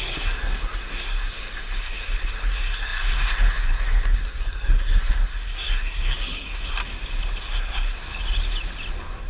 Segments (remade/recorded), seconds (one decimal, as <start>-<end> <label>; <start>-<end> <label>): 0.0-6.8 remade; 6.8-7.4 recorded; 7.4-8.1 remade; 8.1-9.3 recorded